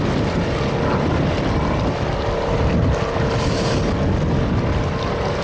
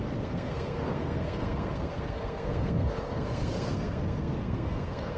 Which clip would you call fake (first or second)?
second